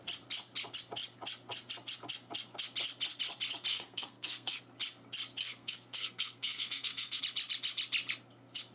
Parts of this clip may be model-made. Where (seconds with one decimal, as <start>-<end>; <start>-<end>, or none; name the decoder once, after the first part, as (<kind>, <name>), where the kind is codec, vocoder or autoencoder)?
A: 3.7-4.6 (codec, SNAC); 5.4-7.2